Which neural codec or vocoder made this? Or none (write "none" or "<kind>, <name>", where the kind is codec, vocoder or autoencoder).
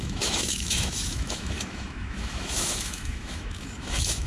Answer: autoencoder, DAC-VAE